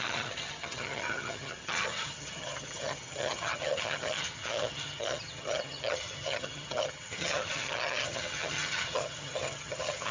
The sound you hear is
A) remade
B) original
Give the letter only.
A